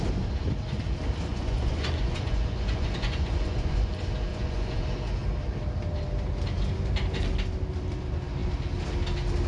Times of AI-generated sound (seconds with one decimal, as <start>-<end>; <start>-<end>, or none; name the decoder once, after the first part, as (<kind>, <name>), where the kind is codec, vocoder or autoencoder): 1.3-3.9 (vocoder, Vocos); 4.3-4.8